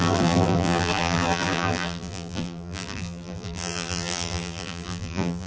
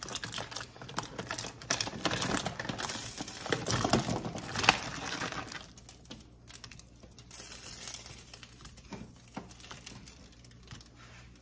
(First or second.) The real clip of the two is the second